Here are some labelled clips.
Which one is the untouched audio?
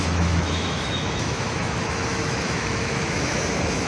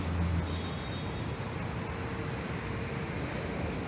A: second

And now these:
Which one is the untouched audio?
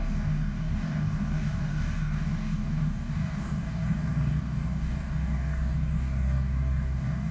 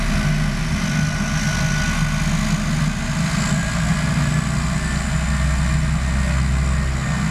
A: second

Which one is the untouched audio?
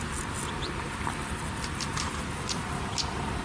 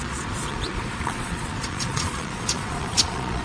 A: first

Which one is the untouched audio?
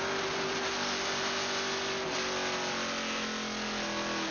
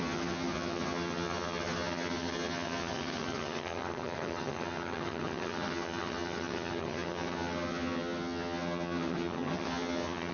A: first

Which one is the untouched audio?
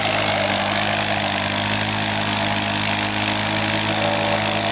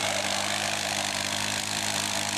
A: first